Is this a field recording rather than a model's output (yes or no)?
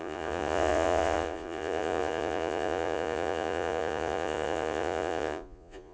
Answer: no